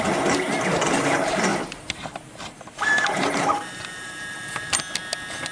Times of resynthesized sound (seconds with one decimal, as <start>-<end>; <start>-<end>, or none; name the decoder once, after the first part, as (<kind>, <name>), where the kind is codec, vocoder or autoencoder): 1.5-4.8 (vocoder, BigVGAN v2)